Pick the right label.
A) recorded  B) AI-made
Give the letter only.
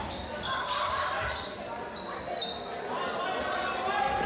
A